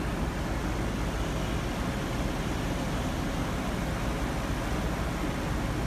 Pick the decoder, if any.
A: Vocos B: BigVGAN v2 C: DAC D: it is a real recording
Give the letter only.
D